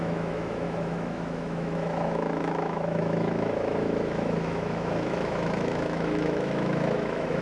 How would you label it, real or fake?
fake